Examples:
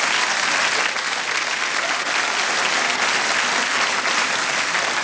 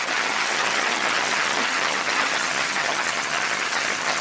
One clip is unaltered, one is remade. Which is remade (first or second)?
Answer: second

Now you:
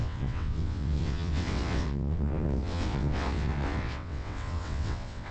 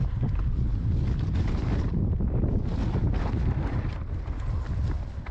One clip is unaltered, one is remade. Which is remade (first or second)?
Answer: first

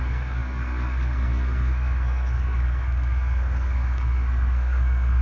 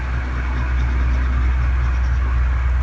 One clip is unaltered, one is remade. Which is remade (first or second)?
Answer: first